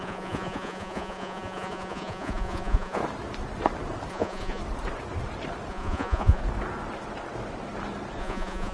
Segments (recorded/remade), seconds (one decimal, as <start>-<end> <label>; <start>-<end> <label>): 0.0-3.0 remade; 3.0-4.1 recorded; 4.1-4.6 remade; 4.6-5.7 recorded; 5.7-6.4 remade; 6.4-8.2 recorded; 8.2-8.7 remade